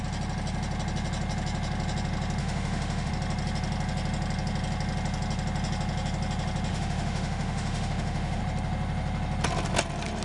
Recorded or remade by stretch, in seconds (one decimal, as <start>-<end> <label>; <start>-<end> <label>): 0.0-2.4 recorded; 2.4-3.1 remade; 3.1-6.7 recorded; 6.7-8.4 remade; 8.4-10.2 recorded